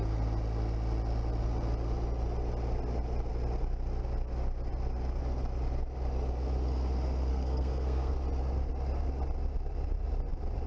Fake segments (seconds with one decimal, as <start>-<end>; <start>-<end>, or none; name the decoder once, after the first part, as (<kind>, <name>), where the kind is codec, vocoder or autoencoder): 7.3-8.1 (codec, SNAC)